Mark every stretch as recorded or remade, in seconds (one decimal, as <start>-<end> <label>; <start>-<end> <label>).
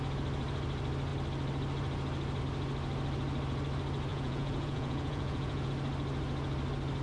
0.0-4.1 recorded; 4.1-5.7 remade; 5.7-7.0 recorded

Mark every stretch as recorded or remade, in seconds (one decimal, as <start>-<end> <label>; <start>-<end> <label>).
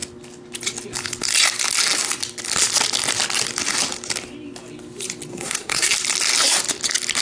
0.0-5.3 recorded; 5.3-5.9 remade; 5.9-7.2 recorded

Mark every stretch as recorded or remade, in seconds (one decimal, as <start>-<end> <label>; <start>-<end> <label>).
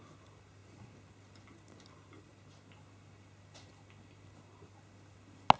0.0-5.6 recorded